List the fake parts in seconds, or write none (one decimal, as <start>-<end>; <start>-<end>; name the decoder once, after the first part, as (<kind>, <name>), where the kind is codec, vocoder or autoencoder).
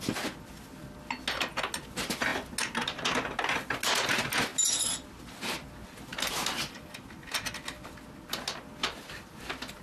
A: none